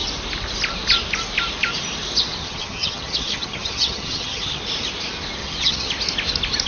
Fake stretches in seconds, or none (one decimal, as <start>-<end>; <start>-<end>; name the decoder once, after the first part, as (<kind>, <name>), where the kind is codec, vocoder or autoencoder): 2.4-4.6 (vocoder, HiFi-GAN); 5.4-5.9